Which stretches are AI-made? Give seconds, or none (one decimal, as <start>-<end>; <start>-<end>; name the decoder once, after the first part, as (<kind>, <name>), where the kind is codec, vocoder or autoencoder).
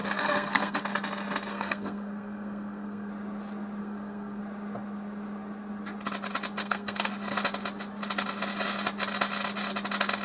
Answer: 0.0-0.8 (codec, SNAC); 1.5-3.1; 3.8-4.4; 6.6-7.1